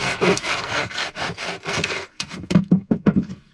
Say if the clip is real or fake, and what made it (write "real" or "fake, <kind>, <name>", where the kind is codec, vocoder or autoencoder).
fake, codec, SNAC